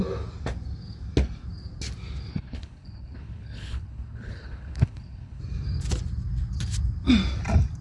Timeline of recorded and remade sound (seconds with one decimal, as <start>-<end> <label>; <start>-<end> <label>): 0.0-2.3 recorded; 2.3-5.4 remade; 5.4-7.8 recorded